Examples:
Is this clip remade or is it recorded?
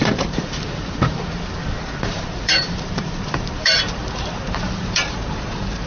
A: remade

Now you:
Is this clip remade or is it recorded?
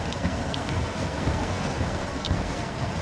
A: remade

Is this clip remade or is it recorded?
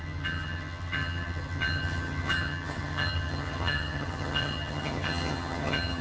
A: remade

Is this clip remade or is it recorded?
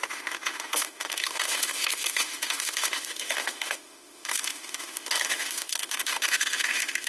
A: remade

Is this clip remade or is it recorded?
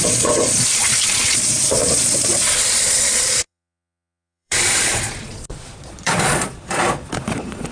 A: remade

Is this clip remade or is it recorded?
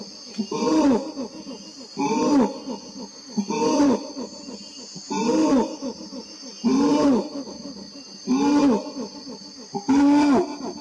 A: recorded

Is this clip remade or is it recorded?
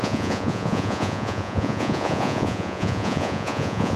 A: remade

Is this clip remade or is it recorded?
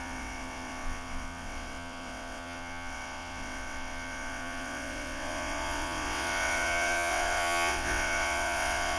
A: remade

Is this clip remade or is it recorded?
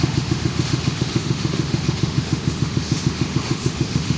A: remade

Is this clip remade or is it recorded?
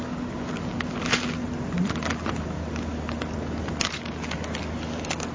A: recorded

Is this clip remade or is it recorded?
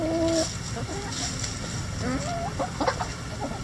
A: recorded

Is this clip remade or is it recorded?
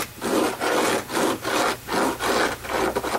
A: recorded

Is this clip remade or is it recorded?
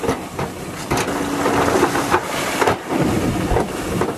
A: recorded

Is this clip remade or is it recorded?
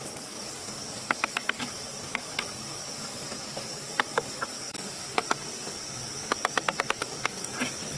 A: remade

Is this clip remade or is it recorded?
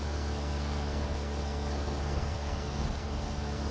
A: remade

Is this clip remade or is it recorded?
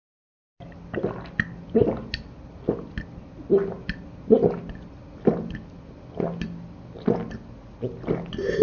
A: recorded